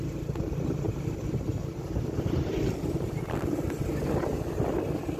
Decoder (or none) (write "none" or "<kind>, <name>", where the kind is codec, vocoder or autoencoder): none